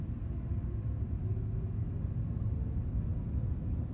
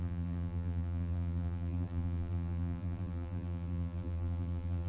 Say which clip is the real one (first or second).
first